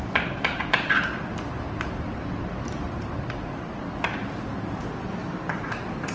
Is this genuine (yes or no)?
yes